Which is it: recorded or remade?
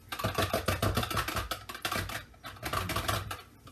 recorded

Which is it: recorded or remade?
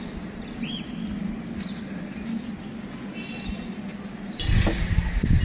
recorded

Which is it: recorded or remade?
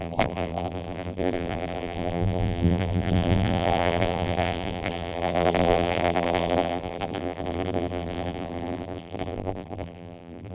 remade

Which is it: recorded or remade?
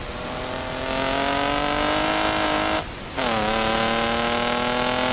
recorded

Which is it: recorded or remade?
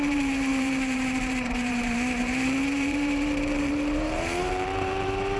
remade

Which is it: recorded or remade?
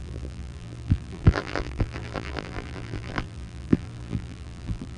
remade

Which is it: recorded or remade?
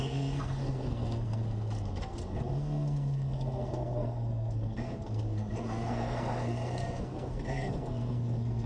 remade